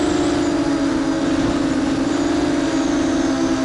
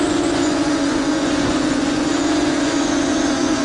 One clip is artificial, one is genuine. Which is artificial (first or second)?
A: second